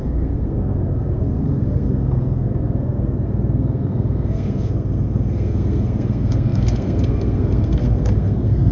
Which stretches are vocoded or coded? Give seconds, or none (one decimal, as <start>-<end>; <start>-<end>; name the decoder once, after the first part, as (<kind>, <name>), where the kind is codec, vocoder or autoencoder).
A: 0.0-8.7 (codec, SNAC)